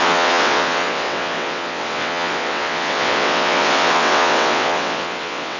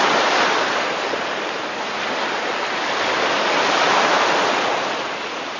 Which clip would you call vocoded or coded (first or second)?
first